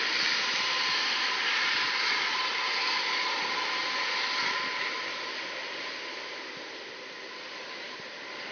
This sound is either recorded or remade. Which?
recorded